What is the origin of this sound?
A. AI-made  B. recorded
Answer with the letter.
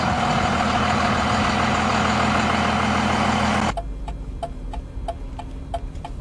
B